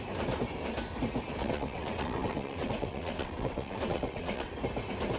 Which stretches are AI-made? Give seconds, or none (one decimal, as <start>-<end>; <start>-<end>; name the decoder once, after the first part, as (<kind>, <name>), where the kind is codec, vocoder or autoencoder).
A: 1.4-4.5 (vocoder, WaveNeXt)